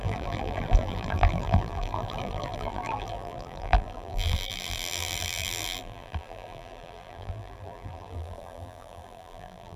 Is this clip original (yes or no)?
no